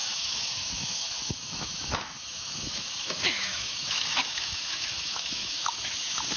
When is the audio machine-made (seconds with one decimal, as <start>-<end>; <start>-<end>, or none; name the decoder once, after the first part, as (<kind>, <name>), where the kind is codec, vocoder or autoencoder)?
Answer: 0.0-6.4 (autoencoder, DAC-VAE)

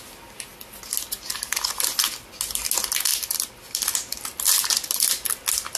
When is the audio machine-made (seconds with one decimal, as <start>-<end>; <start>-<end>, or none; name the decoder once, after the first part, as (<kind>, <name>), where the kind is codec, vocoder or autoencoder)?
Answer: none

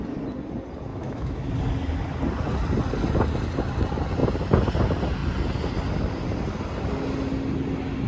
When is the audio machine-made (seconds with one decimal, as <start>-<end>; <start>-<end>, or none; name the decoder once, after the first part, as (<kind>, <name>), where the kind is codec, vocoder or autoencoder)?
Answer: 0.9-1.5 (autoencoder, DAC-VAE)

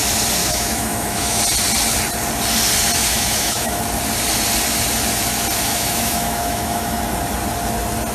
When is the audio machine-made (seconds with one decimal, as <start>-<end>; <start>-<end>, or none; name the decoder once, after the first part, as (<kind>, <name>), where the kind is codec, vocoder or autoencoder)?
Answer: 0.4-1.4 (autoencoder, DAC-VAE); 3.0-3.8; 5.7-7.0

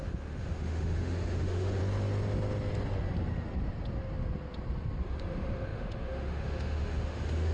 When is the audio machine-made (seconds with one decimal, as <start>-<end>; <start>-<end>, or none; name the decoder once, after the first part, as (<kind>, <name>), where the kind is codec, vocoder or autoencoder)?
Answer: 0.0-1.8 (autoencoder, DAC-VAE); 5.0-7.5

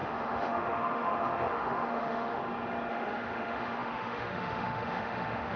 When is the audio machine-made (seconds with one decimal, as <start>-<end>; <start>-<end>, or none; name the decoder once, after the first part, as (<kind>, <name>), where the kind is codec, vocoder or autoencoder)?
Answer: 0.0-2.4 (autoencoder, DAC-VAE); 2.9-5.6

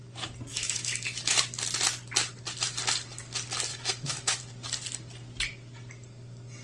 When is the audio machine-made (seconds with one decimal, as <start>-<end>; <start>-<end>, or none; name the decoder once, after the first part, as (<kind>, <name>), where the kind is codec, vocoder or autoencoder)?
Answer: 0.5-1.4 (autoencoder, DAC-VAE); 3.7-4.4

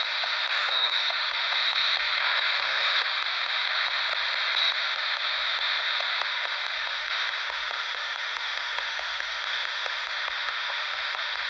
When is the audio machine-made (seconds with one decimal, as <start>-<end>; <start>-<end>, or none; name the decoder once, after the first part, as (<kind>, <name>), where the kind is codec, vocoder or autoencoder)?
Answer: 0.0-4.1 (autoencoder, DAC-VAE); 4.6-11.5